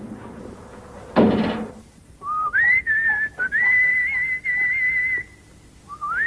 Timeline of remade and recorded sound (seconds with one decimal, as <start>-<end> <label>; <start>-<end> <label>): 0.0-3.9 remade; 3.9-6.3 recorded